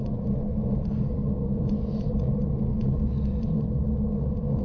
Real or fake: real